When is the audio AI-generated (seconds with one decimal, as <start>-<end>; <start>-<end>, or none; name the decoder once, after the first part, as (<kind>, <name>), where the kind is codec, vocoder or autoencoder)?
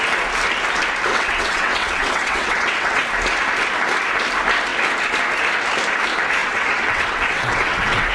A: 1.1-3.0 (vocoder, WaveNeXt); 6.4-8.1